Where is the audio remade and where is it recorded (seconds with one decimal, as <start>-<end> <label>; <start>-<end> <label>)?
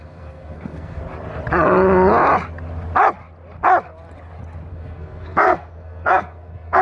0.0-1.0 remade; 1.0-4.7 recorded; 4.7-6.8 remade